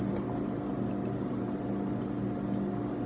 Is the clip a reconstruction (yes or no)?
no